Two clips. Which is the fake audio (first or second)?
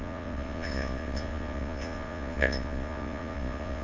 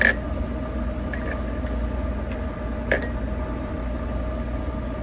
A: first